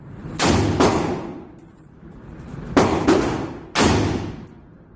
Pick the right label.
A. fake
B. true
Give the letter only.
B